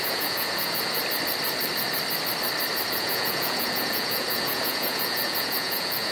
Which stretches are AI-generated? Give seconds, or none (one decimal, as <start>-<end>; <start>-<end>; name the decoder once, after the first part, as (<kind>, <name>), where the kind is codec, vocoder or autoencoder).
0.0-1.0 (vocoder, Vocos); 2.9-6.1